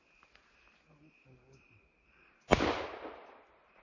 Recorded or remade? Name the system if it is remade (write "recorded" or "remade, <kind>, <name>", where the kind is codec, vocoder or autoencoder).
recorded